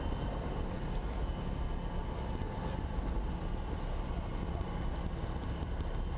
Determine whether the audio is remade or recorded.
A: recorded